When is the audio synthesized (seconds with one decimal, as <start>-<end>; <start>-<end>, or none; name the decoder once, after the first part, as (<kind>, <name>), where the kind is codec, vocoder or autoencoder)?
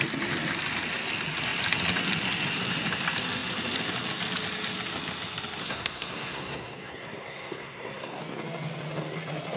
5.6-8.2 (codec, SNAC)